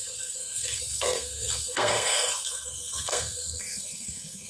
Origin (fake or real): fake